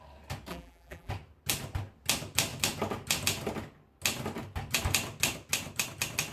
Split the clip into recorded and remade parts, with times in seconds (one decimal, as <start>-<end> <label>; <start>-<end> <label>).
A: 0.0-0.5 recorded; 0.5-1.1 remade; 1.1-6.3 recorded